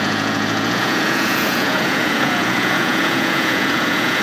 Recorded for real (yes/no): no